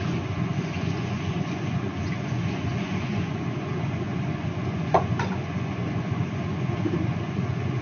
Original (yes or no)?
no